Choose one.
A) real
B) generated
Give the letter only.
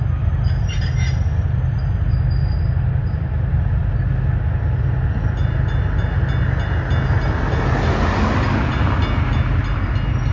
A